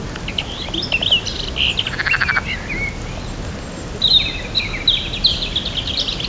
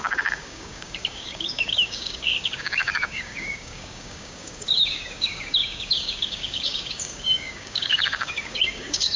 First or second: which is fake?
second